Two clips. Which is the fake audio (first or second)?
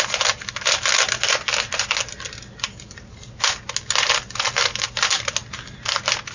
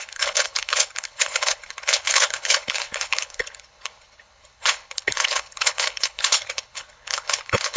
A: second